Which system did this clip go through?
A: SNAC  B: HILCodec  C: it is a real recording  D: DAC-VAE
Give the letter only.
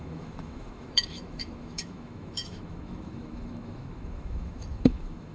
D